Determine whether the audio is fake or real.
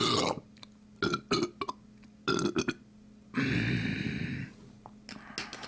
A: real